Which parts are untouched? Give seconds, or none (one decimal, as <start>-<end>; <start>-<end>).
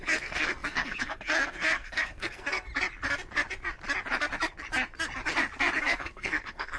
2.7-5.8